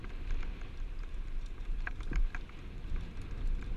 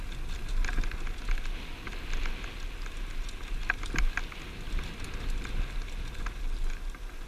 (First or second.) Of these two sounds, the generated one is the first